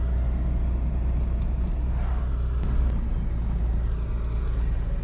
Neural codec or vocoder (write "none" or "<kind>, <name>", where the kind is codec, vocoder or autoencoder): none